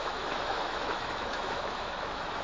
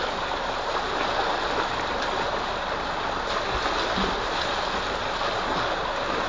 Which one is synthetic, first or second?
first